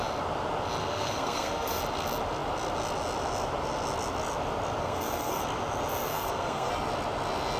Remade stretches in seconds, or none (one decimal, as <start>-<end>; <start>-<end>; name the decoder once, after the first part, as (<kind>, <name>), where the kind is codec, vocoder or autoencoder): 0.8-1.8 (codec, SNAC); 4.8-5.4; 6.1-6.7